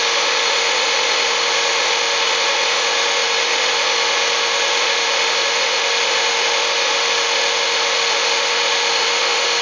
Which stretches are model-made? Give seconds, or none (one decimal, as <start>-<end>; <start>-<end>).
0.0-9.6